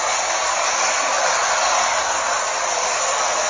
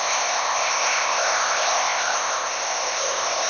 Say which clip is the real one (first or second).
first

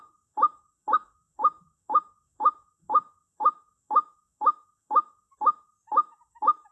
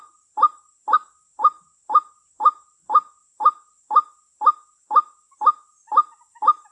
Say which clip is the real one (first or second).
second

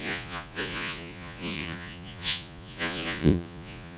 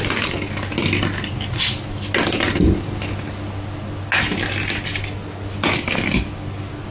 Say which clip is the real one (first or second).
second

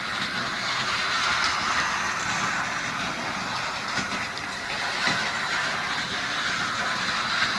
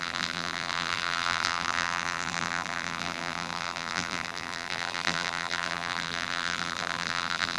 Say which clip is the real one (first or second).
first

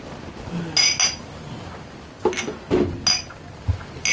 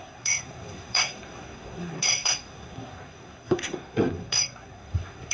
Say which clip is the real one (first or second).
first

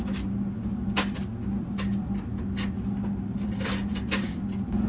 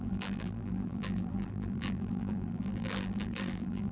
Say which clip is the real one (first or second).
first